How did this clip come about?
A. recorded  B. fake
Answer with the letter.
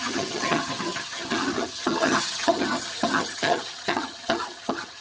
B